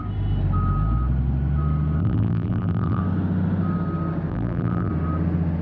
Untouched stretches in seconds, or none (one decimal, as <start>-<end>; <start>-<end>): 0.0-2.0; 3.0-4.3; 4.9-5.6

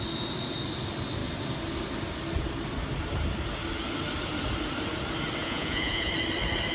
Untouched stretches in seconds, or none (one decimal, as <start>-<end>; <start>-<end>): 0.0-5.4; 6.1-6.7